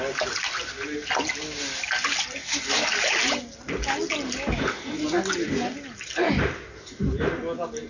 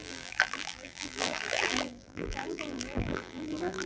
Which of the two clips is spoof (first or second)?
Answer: second